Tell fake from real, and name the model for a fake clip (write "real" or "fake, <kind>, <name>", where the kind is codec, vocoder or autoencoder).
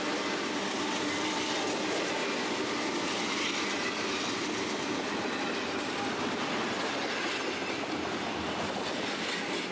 real